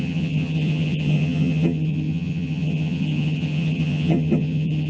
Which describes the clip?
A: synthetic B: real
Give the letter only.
A